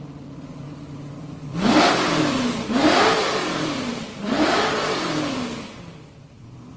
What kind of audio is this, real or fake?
fake